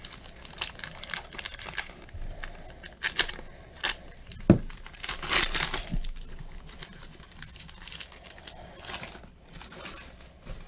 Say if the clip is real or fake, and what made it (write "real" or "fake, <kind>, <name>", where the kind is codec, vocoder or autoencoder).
real